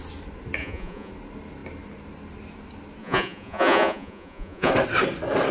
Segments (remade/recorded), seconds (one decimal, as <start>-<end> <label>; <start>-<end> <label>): 0.0-0.6 recorded; 0.6-1.1 remade; 1.1-3.0 recorded; 3.0-4.7 remade; 4.7-5.5 recorded